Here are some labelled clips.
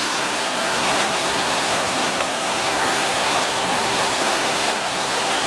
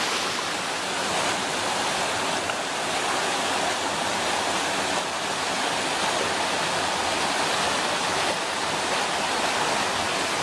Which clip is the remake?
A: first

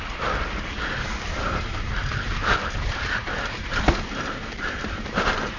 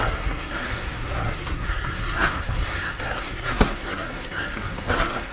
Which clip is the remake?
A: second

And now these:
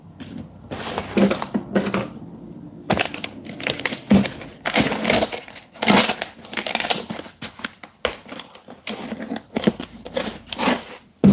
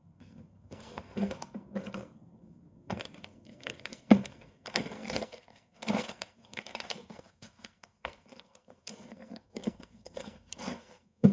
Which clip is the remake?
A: second